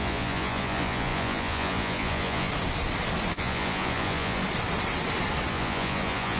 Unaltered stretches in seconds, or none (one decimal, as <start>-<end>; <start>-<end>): 2.5-3.4; 4.4-5.5